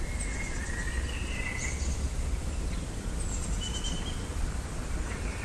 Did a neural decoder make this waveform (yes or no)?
no